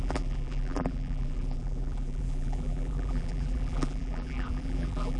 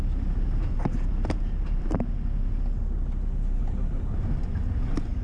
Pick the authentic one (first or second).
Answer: second